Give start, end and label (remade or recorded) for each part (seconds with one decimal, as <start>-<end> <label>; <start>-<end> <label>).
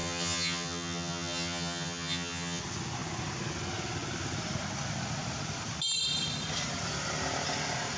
0.0-2.6 remade; 2.6-8.0 recorded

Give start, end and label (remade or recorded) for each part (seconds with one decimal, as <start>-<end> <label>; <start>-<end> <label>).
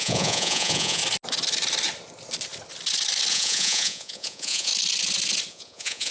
0.0-1.0 remade; 1.0-3.3 recorded; 3.3-4.7 remade; 4.7-5.5 recorded; 5.5-6.1 remade